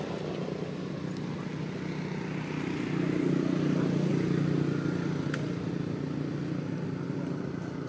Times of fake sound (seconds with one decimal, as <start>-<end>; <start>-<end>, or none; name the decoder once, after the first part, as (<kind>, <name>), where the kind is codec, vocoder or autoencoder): none